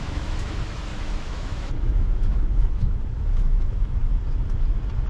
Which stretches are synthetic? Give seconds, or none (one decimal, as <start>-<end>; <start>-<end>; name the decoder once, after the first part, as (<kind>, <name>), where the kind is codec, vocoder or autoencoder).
0.0-4.0 (autoencoder, DAC-VAE)